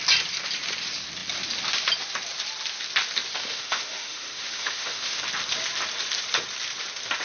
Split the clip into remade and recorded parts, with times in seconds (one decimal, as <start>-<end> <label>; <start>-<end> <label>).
0.0-3.3 recorded; 3.3-5.2 remade; 5.2-7.2 recorded